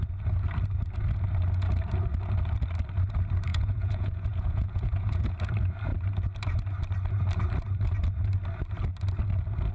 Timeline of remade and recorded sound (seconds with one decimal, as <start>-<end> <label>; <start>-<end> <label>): 0.0-3.5 recorded; 3.5-5.3 remade; 5.3-9.7 recorded